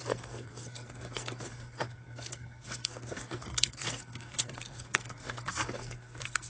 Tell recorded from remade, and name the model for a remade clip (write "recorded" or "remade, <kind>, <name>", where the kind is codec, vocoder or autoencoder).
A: remade, codec, SNAC